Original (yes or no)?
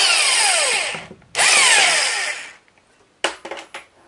yes